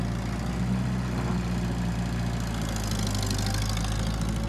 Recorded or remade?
recorded